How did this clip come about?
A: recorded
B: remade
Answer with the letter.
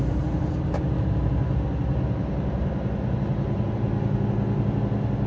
A